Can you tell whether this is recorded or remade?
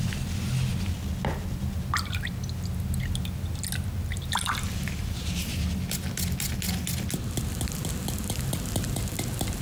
recorded